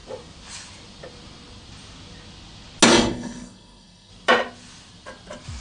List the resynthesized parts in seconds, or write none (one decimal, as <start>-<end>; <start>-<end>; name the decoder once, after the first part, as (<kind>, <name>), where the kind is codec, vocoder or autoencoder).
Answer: 2.9-4.1 (codec, SNAC)